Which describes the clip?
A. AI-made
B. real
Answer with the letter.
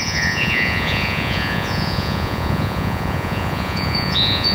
A